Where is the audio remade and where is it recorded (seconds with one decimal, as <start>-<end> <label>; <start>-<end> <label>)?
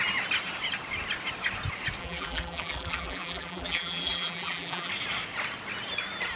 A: 0.0-2.0 recorded; 2.0-4.9 remade; 4.9-6.4 recorded